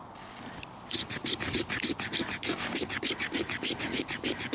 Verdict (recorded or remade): recorded